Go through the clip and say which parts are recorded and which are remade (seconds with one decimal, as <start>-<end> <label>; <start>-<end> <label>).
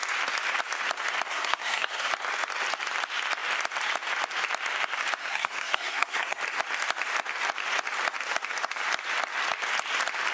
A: 0.0-1.3 recorded; 1.3-2.1 remade; 2.1-5.2 recorded; 5.2-6.4 remade; 6.4-10.3 recorded